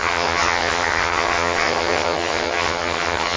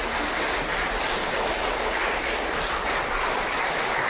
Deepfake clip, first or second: first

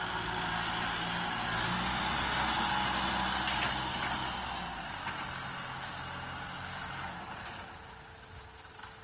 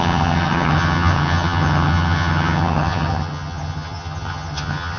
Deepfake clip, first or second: second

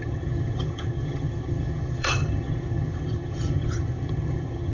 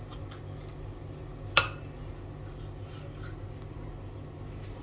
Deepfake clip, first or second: first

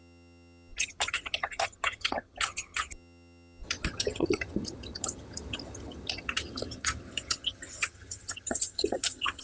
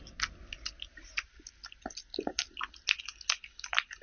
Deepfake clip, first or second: first